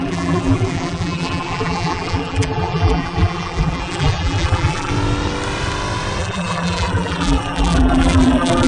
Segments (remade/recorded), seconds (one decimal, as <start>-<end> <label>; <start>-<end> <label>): 0.0-4.9 remade; 4.9-6.2 recorded; 6.2-8.7 remade